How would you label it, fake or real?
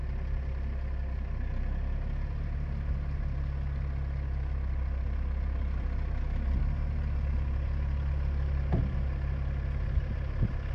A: real